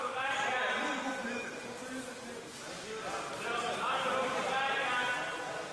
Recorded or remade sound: remade